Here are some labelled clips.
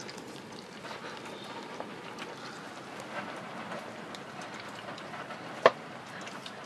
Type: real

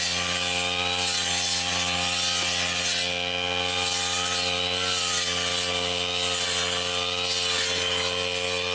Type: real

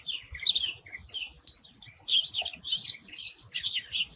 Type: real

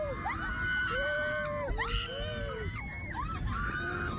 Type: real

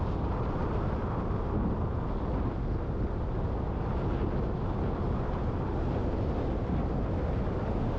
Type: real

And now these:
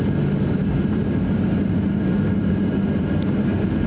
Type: real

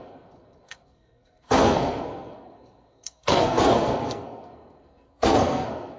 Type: fake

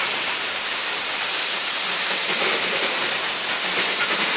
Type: real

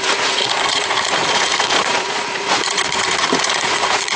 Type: fake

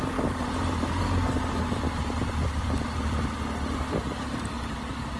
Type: fake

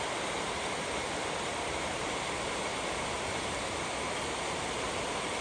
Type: real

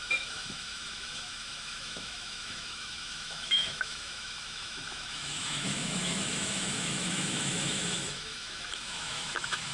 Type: fake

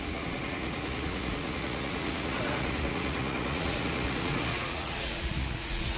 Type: fake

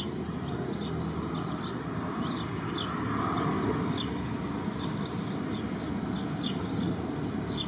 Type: real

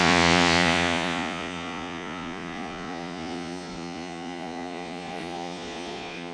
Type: fake